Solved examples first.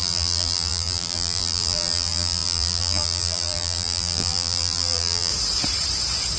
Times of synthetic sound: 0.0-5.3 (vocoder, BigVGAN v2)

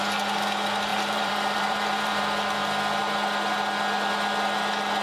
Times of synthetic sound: 0.9-2.2 (vocoder, BigVGAN v2)

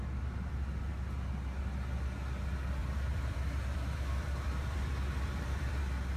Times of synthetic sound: 2.8-5.8 (vocoder, BigVGAN v2)

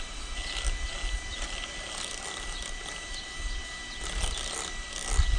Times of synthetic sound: 1.3-3.2 (vocoder, BigVGAN v2)

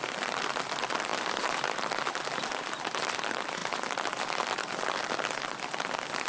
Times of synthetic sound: 0.0-6.3 (vocoder, BigVGAN v2)

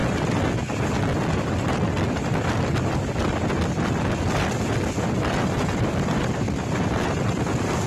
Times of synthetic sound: 1.5-7.9 (vocoder, BigVGAN v2)

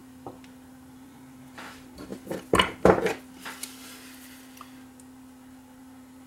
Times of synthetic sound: 0.7-2.1 (vocoder, BigVGAN v2); 5.8-6.3

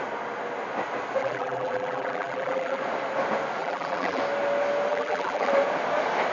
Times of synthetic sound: 1.2-2.8 (vocoder, BigVGAN v2); 3.6-4.2; 4.9-5.5